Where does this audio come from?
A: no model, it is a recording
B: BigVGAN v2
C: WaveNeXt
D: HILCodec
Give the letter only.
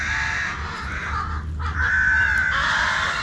A